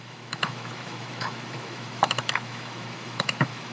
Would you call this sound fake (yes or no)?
yes